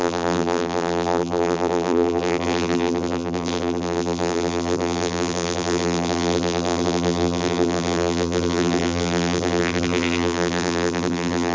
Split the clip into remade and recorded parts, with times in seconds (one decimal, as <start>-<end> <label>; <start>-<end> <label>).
0.0-11.5 remade